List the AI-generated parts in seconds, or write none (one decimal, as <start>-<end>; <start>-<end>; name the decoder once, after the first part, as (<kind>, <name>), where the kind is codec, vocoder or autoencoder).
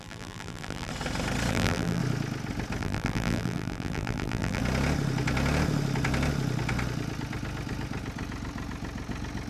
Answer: 0.0-0.9 (vocoder, BigVGAN v2); 1.5-2.0; 2.8-4.6